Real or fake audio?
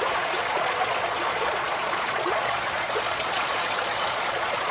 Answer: fake